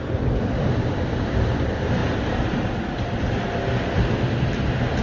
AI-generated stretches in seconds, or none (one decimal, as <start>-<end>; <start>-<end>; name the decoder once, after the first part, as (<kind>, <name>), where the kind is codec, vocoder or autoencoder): none

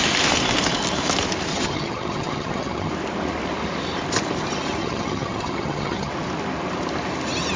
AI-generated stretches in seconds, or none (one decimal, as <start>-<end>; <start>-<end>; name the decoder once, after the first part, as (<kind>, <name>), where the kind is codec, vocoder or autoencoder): 1.5-2.9 (vocoder, HiFi-GAN); 4.8-6.1

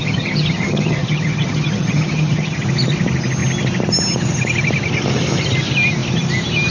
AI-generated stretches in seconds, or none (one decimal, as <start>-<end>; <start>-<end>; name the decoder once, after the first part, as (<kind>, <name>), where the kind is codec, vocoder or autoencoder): 0.0-2.6 (vocoder, HiFi-GAN)